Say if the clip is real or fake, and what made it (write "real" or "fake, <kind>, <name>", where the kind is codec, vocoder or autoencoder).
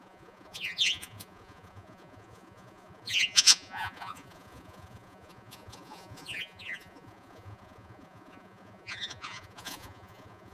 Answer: fake, vocoder, Vocos